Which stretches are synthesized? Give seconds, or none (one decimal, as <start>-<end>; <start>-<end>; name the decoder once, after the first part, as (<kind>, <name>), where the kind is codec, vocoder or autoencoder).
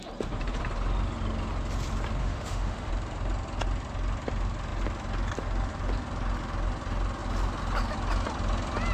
2.2-2.9 (autoencoder, DAC-VAE)